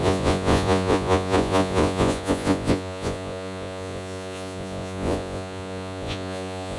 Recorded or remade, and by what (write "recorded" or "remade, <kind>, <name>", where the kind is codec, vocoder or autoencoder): remade, vocoder, Vocos